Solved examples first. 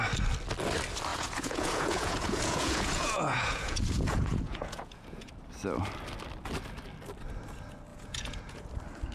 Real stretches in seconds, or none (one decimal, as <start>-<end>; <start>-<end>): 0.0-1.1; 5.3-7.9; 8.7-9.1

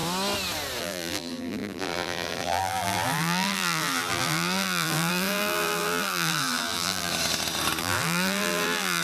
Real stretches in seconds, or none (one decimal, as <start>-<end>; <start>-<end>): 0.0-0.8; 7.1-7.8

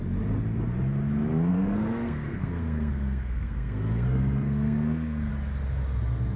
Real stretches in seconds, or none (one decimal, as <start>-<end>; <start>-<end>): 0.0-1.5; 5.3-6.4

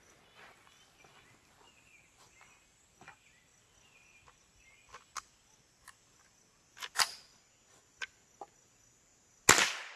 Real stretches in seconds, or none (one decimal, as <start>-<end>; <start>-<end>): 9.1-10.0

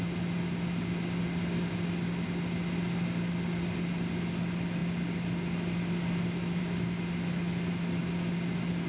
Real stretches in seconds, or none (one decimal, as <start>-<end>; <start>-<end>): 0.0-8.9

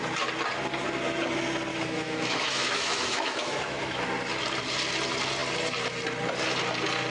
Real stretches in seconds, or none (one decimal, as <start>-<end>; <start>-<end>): 0.0-1.7; 4.1-7.1